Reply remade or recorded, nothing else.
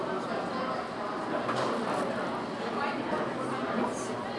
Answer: recorded